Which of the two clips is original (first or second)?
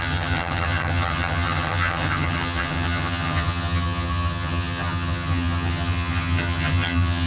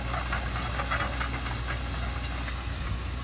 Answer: second